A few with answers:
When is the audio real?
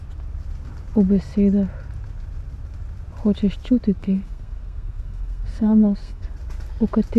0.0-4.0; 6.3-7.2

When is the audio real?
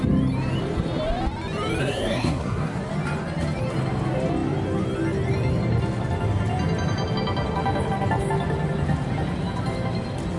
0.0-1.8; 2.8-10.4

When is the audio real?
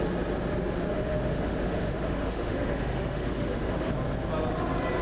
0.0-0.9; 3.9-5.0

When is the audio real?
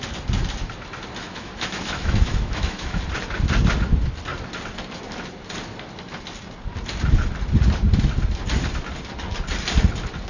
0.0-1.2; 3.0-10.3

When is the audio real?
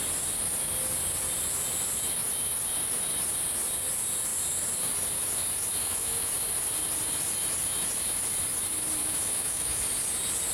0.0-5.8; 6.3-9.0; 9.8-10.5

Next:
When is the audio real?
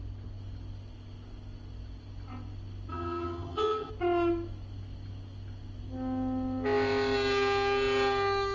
0.0-2.9; 3.9-8.5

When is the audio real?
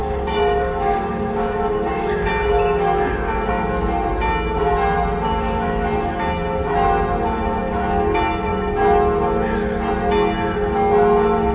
2.3-11.5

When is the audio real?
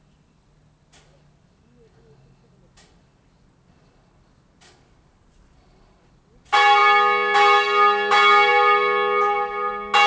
0.0-10.1